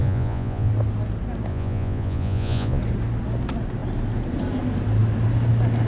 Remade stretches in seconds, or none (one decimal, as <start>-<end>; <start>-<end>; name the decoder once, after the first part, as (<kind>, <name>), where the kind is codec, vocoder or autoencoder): 0.0-0.7 (vocoder, Vocos); 1.5-2.8

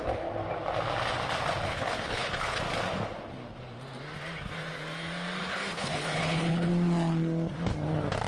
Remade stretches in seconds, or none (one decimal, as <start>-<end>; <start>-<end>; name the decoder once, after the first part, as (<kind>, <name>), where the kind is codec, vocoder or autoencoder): 1.7-2.6 (codec, HILCodec); 5.4-6.7

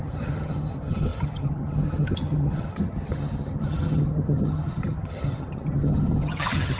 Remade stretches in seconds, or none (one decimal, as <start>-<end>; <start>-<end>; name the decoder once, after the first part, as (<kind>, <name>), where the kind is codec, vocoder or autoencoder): 0.0-6.8 (vocoder, HiFi-GAN)

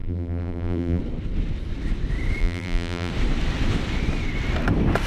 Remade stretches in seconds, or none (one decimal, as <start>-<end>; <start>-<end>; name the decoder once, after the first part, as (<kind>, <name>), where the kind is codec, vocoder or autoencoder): 0.0-1.0 (vocoder, BigVGAN v2); 2.4-3.1

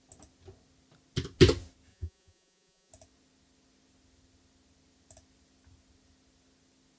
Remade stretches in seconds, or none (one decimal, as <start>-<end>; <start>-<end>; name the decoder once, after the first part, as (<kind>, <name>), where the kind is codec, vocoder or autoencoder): 1.9-2.9 (vocoder, Vocos)

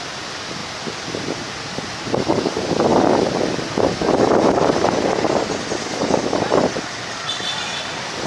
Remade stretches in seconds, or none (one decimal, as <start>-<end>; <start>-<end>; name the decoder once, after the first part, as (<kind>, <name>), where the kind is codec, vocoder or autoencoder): none